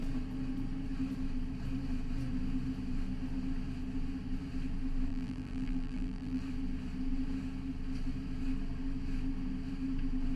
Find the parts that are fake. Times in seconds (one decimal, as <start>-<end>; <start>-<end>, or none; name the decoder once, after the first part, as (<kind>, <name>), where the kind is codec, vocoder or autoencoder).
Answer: 5.1-6.4 (vocoder, BigVGAN v2)